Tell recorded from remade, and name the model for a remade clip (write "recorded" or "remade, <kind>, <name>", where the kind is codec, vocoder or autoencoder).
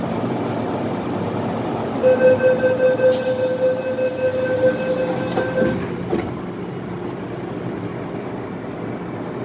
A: recorded